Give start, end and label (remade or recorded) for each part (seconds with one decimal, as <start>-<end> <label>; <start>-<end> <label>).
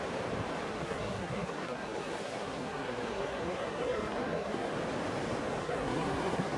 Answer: 0.0-0.7 recorded; 0.7-4.7 remade; 4.7-5.6 recorded; 5.6-6.6 remade